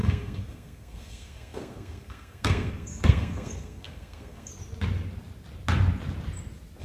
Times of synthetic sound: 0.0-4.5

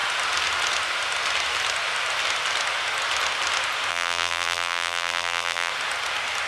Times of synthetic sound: 3.9-5.7

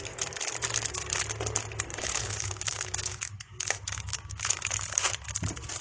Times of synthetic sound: 1.9-5.1

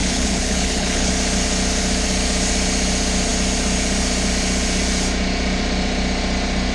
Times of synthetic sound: 0.0-1.1

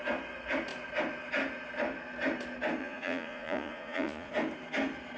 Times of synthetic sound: 2.8-4.3